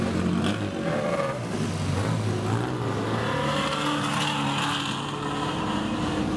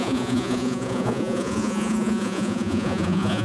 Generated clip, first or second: second